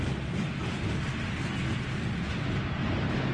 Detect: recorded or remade recorded